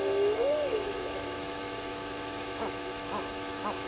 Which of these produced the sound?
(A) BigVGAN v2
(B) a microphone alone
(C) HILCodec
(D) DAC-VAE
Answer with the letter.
D